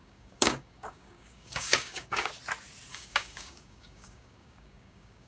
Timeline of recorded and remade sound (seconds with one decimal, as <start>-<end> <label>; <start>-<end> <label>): 0.0-2.3 remade; 2.3-2.9 recorded; 2.9-5.3 remade